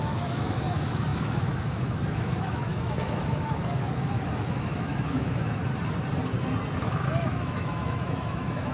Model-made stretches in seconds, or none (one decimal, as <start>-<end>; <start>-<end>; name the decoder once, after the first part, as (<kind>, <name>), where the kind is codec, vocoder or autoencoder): 0.0-5.6 (autoencoder, DAC-VAE); 6.8-8.7